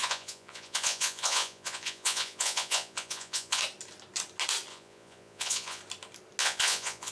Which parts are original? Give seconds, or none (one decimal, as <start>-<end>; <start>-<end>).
3.6-4.7; 5.8-6.4